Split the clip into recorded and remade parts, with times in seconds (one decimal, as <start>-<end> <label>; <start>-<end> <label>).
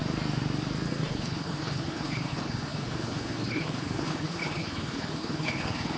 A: 0.0-0.9 recorded; 0.9-6.0 remade